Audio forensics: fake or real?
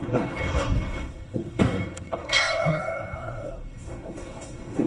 fake